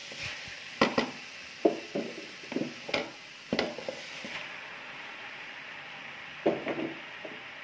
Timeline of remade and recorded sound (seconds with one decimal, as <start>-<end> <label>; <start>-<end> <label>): 0.0-3.0 recorded; 3.0-3.5 remade; 3.5-4.7 recorded; 4.7-5.5 remade; 5.5-7.6 recorded